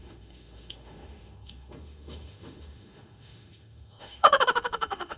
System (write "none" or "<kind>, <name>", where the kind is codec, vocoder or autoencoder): autoencoder, DAC-VAE